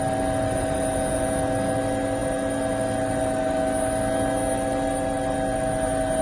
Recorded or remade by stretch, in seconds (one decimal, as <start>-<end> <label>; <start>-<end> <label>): 0.0-6.2 recorded